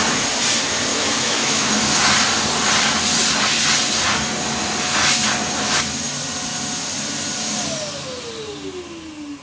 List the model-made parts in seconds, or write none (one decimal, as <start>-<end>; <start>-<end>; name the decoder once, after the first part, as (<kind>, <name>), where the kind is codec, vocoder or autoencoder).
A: 0.9-1.7 (autoencoder, DAC-VAE)